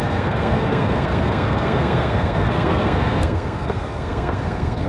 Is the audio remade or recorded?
remade